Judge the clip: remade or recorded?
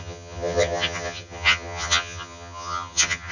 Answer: remade